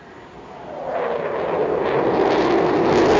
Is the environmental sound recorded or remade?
recorded